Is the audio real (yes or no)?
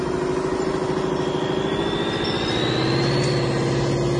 yes